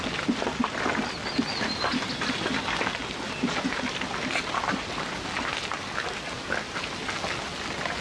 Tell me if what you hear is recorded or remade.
recorded